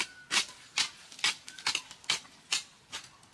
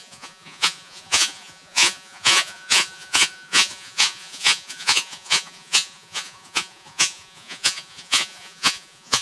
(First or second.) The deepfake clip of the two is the second